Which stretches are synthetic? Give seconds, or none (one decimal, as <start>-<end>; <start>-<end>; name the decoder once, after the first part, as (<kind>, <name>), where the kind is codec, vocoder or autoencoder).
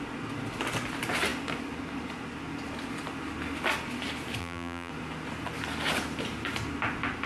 4.4-4.9 (vocoder, BigVGAN v2)